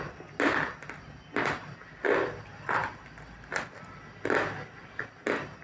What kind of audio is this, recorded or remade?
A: recorded